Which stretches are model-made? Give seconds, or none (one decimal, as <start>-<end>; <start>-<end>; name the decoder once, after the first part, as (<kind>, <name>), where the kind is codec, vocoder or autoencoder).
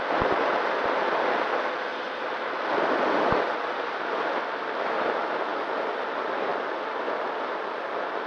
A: 1.9-4.9 (vocoder, BigVGAN v2); 6.5-8.3